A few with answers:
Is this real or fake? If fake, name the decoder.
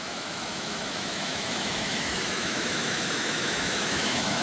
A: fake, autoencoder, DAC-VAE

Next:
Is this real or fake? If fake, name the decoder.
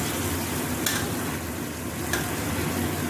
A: real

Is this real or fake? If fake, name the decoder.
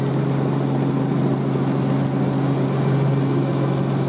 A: real